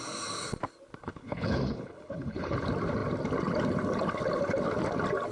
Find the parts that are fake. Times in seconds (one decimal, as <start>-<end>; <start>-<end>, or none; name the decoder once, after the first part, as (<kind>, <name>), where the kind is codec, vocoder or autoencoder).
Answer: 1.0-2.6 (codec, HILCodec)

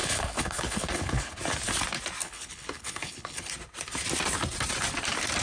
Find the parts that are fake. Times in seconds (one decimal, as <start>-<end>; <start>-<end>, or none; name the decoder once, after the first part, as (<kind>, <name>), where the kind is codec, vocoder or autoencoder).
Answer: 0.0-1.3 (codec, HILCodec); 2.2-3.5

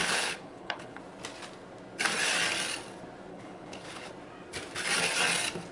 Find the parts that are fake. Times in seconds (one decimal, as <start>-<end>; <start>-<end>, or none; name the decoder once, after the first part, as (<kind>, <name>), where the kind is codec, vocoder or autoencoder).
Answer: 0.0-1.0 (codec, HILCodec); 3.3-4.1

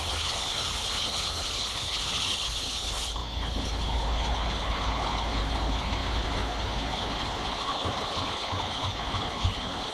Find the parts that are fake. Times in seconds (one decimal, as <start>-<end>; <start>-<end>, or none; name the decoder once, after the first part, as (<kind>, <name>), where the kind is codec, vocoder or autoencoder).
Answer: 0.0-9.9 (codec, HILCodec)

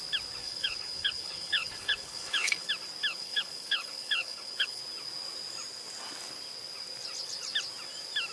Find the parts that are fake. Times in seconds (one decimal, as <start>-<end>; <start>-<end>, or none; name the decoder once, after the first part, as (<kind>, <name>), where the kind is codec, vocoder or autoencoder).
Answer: 0.4-2.7 (codec, HILCodec); 3.1-4.8

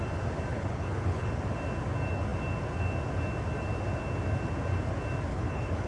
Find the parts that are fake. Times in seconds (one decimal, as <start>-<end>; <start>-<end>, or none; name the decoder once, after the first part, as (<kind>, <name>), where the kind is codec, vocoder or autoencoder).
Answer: 0.5-1.3 (codec, HILCodec); 5.3-5.9